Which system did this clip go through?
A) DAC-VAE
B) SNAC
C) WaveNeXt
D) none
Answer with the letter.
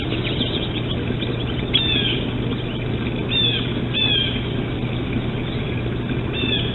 D